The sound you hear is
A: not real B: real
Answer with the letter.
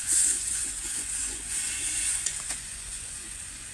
A